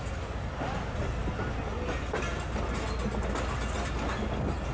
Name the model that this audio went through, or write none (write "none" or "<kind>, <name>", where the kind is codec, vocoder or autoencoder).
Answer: none